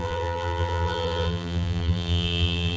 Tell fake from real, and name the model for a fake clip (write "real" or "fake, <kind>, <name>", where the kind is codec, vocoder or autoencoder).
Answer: fake, vocoder, BigVGAN v2